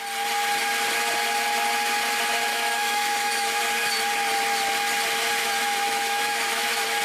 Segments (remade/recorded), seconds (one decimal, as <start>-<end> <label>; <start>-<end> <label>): 0.0-2.5 recorded; 2.5-3.6 remade; 3.6-5.4 recorded; 5.4-7.0 remade